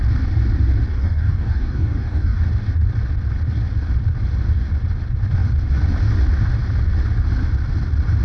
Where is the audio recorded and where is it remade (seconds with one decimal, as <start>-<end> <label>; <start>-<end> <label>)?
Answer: 0.0-0.9 recorded; 0.9-2.4 remade; 2.4-8.2 recorded